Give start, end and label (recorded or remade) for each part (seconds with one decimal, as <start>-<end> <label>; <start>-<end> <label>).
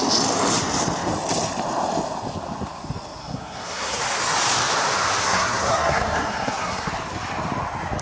0.0-3.2 recorded; 3.2-4.0 remade; 4.0-5.2 recorded; 5.2-6.9 remade; 6.9-8.0 recorded